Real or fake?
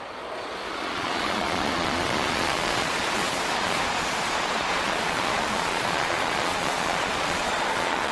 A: fake